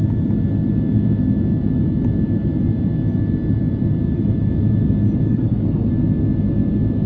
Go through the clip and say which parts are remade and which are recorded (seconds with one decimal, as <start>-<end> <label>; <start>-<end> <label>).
0.0-5.3 recorded; 5.3-5.9 remade; 5.9-7.1 recorded